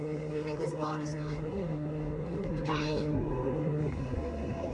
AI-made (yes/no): yes